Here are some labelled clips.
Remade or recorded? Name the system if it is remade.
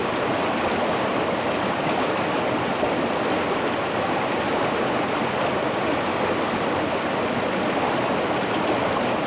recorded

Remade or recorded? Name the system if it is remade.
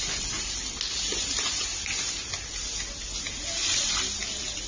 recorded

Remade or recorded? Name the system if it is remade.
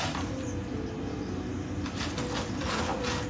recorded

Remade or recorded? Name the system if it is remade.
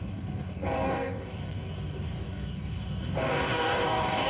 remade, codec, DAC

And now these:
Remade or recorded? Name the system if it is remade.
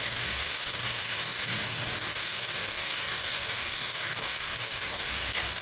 remade, codec, DAC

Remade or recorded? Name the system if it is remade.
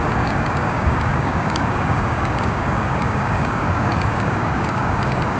remade, codec, DAC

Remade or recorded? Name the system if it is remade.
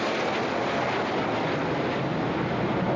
recorded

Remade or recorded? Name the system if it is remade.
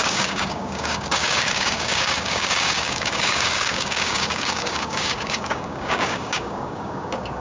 remade, codec, DAC